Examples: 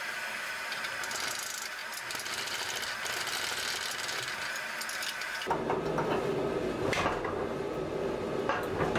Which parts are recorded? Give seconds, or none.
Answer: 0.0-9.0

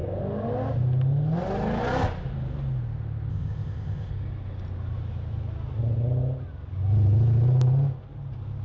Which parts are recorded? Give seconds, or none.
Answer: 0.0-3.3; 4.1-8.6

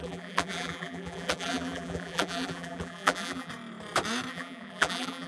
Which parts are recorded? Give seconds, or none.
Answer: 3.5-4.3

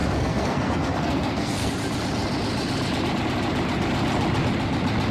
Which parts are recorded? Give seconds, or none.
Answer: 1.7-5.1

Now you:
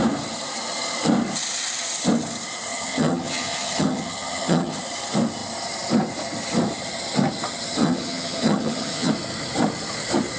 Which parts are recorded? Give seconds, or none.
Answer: 0.0-2.7; 4.8-7.8; 9.1-10.4

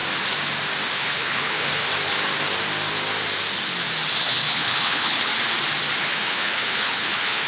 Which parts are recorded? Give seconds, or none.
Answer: 0.0-0.9; 1.9-4.2; 5.3-6.0